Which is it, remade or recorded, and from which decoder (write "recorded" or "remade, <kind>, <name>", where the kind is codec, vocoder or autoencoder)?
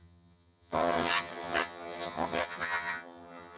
remade, vocoder, HiFi-GAN